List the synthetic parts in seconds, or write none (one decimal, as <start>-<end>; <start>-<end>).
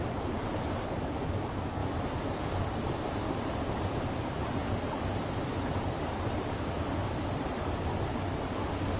none